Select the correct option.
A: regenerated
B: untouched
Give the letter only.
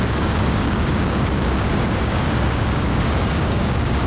A